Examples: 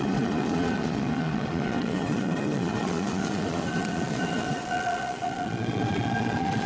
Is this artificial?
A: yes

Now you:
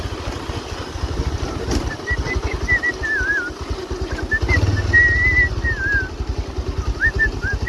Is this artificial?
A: no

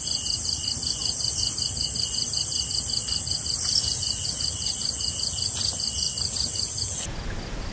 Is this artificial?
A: no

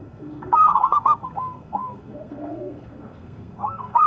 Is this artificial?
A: yes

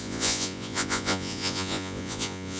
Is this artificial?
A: yes